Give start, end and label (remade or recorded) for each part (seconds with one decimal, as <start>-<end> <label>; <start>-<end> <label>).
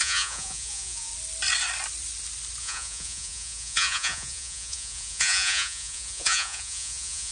0.0-1.1 remade; 1.1-2.6 recorded; 2.6-7.3 remade